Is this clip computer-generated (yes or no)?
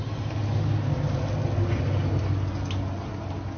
no